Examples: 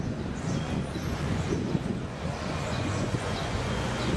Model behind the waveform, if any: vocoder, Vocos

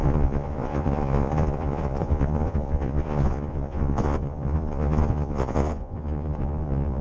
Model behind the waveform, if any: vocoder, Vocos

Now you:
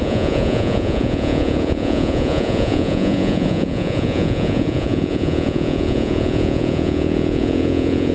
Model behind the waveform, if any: vocoder, Vocos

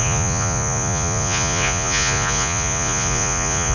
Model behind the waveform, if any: vocoder, Vocos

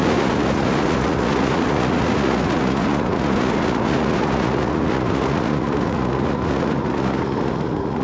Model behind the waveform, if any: vocoder, Vocos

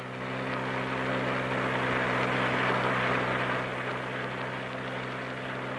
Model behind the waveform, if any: none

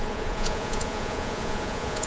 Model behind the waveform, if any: vocoder, Vocos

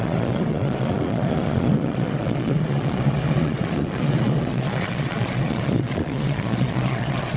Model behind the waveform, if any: vocoder, Vocos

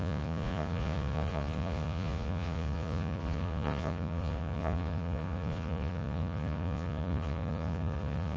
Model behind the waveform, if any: vocoder, Vocos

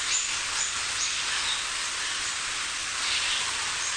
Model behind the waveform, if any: none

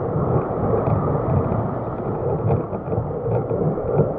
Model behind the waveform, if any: none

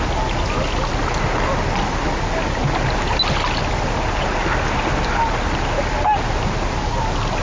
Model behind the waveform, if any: none